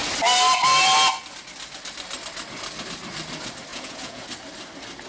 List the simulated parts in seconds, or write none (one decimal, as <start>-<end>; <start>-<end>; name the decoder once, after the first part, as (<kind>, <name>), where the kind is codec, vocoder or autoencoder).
3.7-4.2 (vocoder, Vocos)